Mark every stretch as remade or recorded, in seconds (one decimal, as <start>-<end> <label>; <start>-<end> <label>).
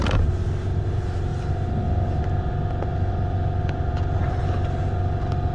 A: 0.0-5.5 recorded